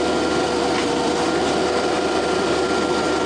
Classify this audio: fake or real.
fake